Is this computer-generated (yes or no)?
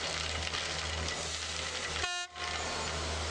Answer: no